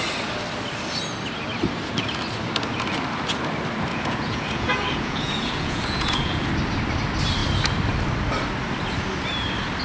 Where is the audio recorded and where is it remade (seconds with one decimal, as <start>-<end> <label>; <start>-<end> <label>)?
0.0-3.9 recorded; 3.9-6.5 remade; 6.5-9.8 recorded